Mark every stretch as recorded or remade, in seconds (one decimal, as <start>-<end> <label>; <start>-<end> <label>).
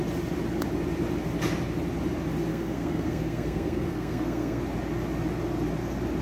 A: 0.0-2.5 recorded; 2.5-4.6 remade; 4.6-6.2 recorded